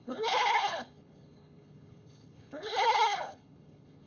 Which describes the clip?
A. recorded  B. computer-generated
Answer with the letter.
B